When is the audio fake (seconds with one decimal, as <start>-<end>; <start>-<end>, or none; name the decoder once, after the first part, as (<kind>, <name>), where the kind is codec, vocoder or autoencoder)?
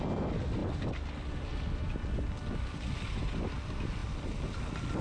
none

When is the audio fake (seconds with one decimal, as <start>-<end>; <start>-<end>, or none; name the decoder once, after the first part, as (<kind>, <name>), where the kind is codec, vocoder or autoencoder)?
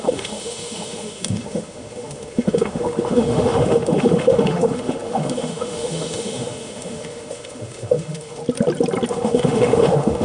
0.0-8.4 (autoencoder, DAC-VAE); 9.1-10.2